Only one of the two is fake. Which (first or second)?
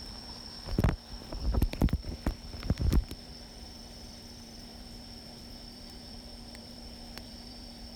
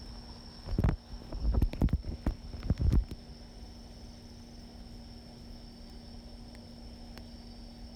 first